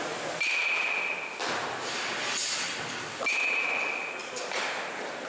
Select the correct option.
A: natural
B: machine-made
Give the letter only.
A